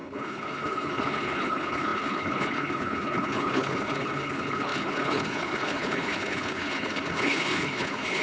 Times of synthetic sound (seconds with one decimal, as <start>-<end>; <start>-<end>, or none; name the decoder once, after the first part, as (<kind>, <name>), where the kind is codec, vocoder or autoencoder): 0.0-8.2 (codec, HILCodec)